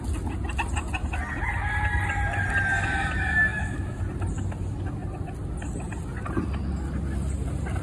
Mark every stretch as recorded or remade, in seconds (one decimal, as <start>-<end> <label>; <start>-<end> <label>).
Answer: 0.0-3.5 recorded; 3.5-4.0 remade; 4.0-7.8 recorded